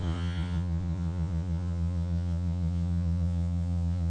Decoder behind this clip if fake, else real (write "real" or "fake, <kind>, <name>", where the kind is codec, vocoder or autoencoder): fake, vocoder, Vocos